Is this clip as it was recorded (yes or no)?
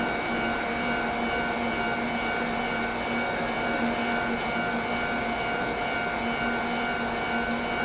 yes